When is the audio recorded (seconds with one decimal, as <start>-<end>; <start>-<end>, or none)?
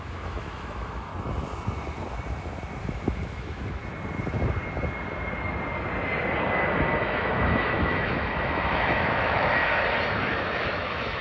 1.1-2.8; 3.8-7.0; 9.6-10.2